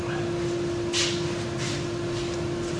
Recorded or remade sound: recorded